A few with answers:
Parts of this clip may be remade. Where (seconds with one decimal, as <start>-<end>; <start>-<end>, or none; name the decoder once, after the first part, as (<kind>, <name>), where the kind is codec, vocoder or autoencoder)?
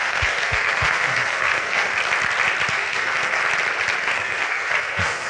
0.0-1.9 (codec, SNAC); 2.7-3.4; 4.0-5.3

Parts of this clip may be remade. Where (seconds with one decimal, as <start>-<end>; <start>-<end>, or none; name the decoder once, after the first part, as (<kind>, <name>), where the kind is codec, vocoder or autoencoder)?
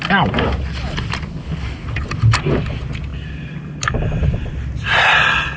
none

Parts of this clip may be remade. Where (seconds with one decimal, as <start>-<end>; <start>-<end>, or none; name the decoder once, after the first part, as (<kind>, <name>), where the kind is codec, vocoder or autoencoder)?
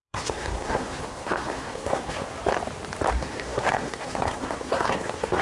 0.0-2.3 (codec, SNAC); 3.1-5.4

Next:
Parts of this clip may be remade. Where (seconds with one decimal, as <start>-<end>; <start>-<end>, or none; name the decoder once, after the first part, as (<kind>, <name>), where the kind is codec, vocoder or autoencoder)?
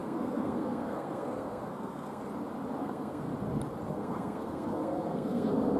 0.0-2.2 (codec, SNAC); 2.8-3.3; 3.9-5.8